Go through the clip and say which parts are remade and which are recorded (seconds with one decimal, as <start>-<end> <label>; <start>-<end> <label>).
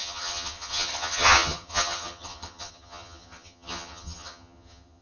0.0-5.0 remade